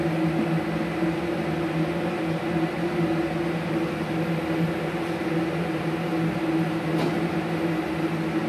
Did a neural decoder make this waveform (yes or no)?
no